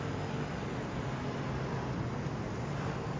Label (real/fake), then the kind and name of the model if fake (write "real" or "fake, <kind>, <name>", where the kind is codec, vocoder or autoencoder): real